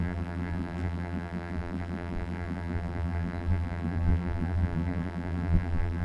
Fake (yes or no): yes